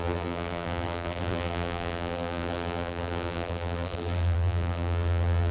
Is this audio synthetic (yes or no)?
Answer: yes